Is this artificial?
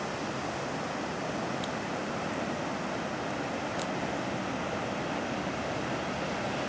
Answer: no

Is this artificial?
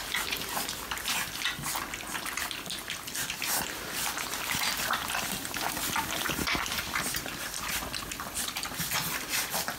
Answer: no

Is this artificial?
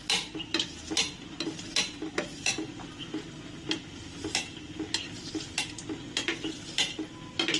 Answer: no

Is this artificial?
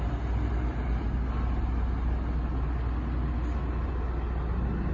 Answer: no